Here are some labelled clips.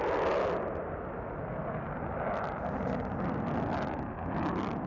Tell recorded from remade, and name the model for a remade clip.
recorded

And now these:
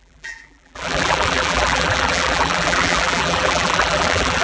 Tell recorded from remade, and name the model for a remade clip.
remade, vocoder, BigVGAN v2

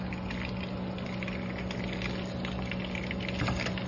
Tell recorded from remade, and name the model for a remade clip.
recorded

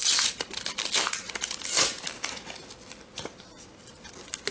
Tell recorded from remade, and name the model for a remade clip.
recorded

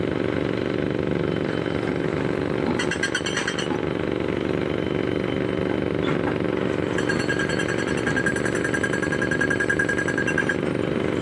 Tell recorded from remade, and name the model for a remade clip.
recorded